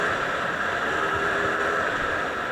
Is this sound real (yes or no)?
yes